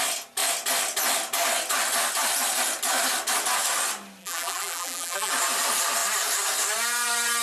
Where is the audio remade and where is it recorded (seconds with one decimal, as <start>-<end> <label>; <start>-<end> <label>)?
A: 0.0-4.2 recorded; 4.2-5.3 remade; 5.3-7.4 recorded

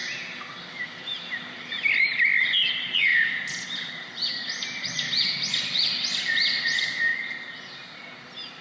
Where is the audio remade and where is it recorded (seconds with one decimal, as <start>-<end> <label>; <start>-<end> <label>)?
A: 0.0-3.1 recorded; 3.1-5.1 remade; 5.1-8.6 recorded

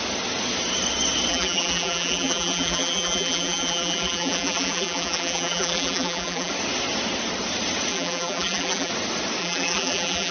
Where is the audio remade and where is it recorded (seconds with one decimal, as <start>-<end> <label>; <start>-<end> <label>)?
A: 0.0-1.3 recorded; 1.3-6.5 remade; 6.5-7.9 recorded; 7.9-8.9 remade; 8.9-9.4 recorded; 9.4-10.3 remade

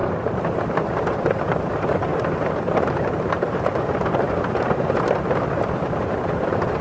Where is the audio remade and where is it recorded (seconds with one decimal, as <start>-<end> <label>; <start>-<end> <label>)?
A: 0.0-6.8 remade

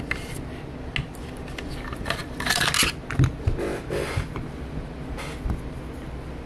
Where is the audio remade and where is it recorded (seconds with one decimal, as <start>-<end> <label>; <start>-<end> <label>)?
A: 0.0-3.7 recorded; 3.7-4.3 remade; 4.3-6.5 recorded

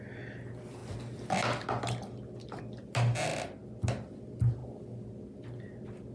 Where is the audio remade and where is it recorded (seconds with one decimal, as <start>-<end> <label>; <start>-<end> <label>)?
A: 0.0-6.1 recorded

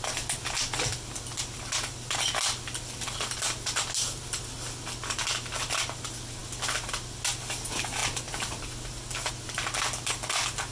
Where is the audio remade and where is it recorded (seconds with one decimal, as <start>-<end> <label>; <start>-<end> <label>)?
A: 0.0-10.7 recorded

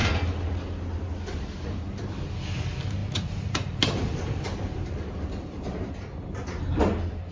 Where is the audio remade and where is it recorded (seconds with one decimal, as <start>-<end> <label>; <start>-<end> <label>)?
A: 0.0-3.0 recorded; 3.0-5.9 remade; 5.9-7.3 recorded